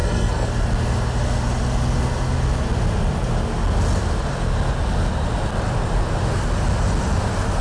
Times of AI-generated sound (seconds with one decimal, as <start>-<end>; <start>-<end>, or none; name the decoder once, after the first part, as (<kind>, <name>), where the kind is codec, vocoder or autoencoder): 0.0-0.5 (codec, SNAC)